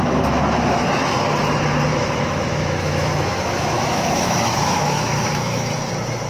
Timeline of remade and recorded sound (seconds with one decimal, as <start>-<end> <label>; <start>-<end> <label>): 0.0-1.9 recorded; 1.9-5.7 remade; 5.7-6.3 recorded